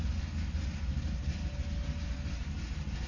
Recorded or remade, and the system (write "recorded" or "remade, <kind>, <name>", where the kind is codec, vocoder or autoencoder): recorded